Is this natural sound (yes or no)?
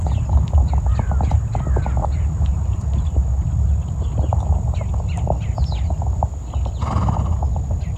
yes